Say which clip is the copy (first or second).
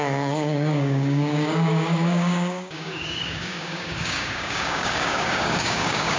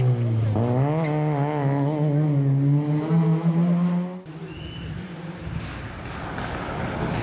first